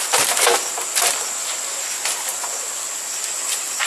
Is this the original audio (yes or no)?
yes